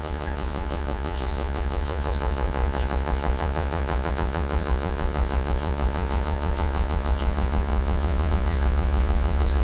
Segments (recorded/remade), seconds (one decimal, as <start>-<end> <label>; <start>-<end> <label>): 0.0-9.6 remade